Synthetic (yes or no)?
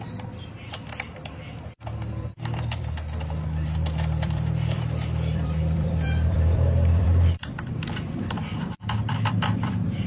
yes